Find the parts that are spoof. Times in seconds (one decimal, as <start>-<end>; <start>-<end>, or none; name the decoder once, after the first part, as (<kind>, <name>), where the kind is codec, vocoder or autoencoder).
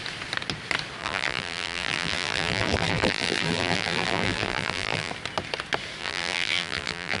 1.0-5.1 (vocoder, BigVGAN v2); 6.0-7.2